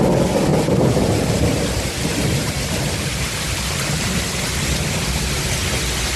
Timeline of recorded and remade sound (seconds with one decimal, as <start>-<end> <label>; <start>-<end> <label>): 0.0-0.5 recorded; 0.5-4.2 remade; 4.2-6.2 recorded